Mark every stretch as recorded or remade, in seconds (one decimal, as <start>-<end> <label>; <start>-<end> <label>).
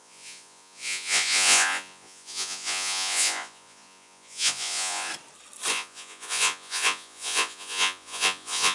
0.0-5.1 remade; 5.1-5.7 recorded; 5.7-8.7 remade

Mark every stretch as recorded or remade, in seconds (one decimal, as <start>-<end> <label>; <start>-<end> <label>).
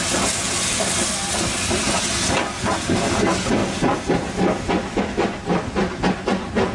0.0-6.7 recorded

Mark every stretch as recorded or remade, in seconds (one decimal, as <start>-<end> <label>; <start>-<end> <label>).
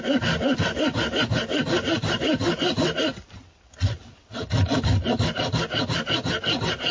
0.0-6.9 recorded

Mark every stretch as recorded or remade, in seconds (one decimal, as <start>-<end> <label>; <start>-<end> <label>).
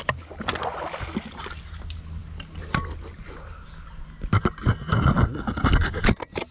0.0-6.5 recorded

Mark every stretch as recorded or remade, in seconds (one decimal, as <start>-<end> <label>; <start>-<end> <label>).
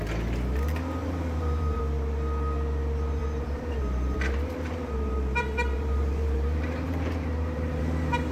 0.0-1.0 recorded; 1.0-1.8 remade; 1.8-3.2 recorded; 3.2-7.8 remade; 7.8-8.3 recorded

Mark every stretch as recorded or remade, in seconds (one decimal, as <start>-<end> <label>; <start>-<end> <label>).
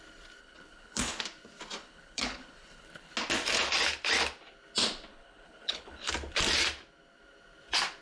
0.0-0.4 recorded; 0.4-1.2 remade; 1.2-1.8 recorded; 1.8-3.1 remade; 3.1-5.1 recorded; 5.1-6.1 remade; 6.1-8.0 recorded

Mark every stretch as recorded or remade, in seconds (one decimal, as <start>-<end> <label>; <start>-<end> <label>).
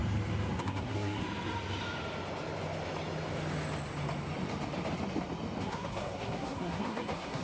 0.0-0.6 recorded; 0.6-1.2 remade; 1.2-5.6 recorded; 5.6-7.4 remade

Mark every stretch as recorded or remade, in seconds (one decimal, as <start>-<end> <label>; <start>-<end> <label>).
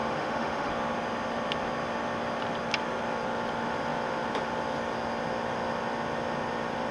0.0-0.7 remade; 0.7-6.9 recorded